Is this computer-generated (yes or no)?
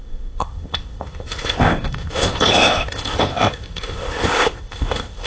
yes